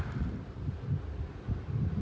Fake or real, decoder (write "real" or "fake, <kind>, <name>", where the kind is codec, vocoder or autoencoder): real